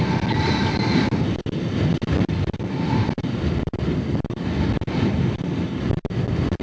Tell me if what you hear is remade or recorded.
recorded